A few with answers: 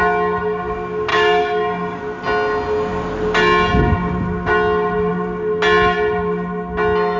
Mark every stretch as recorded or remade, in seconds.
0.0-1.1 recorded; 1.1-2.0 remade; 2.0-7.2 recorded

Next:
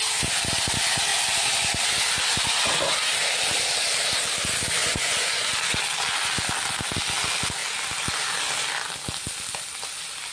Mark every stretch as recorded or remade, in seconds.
0.0-4.8 recorded; 4.8-5.5 remade; 5.5-10.3 recorded

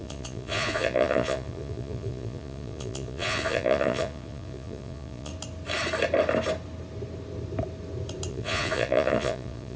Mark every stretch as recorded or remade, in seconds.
0.0-5.3 remade; 5.3-8.3 recorded; 8.3-9.8 remade

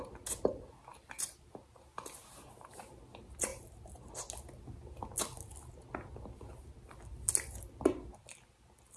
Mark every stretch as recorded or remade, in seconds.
0.0-2.2 recorded; 2.2-3.0 remade; 3.0-3.5 recorded; 3.5-4.1 remade; 4.1-9.0 recorded